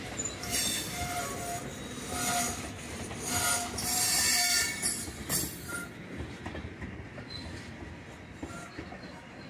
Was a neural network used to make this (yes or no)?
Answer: no